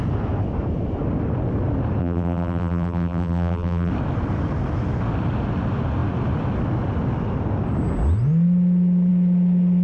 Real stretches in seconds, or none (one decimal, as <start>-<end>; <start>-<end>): 0.0-2.0; 3.9-9.8